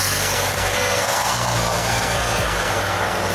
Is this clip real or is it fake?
fake